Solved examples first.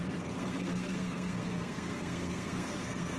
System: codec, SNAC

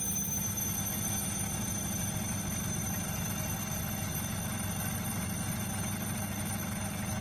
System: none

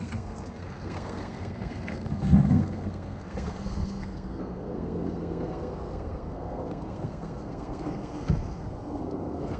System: codec, SNAC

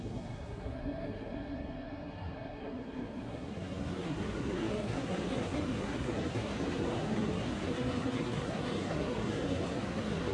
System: codec, SNAC